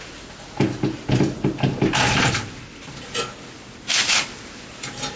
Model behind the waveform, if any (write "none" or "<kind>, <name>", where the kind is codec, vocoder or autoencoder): none